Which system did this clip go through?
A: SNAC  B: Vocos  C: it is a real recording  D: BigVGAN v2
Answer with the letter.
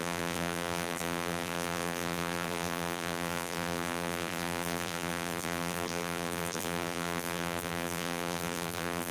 D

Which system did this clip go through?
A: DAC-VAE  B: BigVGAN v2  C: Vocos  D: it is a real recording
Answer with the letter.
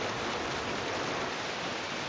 D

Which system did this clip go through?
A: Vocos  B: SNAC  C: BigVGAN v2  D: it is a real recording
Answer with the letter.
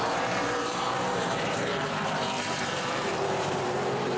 C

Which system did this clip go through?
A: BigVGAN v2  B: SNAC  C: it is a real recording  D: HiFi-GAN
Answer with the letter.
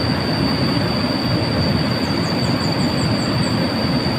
C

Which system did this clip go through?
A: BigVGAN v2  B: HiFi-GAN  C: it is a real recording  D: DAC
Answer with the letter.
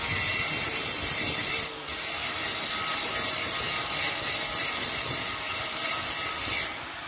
A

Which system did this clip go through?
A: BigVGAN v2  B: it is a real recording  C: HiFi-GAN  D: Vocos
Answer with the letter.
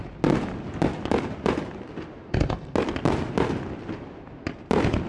B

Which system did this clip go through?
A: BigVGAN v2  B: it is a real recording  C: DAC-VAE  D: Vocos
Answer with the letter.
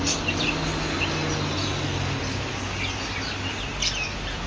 B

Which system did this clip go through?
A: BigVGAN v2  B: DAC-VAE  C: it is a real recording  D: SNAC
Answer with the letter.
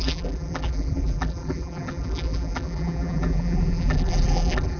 A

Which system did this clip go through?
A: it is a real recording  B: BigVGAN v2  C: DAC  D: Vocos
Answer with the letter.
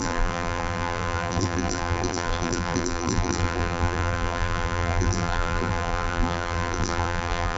B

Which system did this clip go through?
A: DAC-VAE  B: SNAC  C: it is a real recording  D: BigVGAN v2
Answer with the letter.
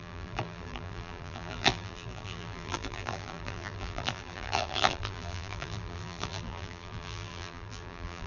D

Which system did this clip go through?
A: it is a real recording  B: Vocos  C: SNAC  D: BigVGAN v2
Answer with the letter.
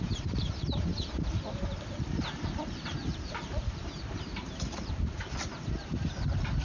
D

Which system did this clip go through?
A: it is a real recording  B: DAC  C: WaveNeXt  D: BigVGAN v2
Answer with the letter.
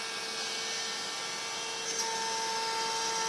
A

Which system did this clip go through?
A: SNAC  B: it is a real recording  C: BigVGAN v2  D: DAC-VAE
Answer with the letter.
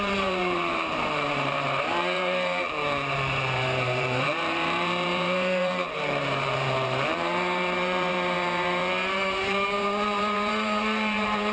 C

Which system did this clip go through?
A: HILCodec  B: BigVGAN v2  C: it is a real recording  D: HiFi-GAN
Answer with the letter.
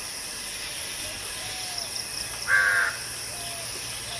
C